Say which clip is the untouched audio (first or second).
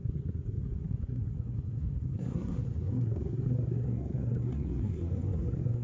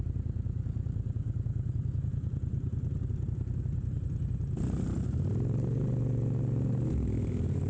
second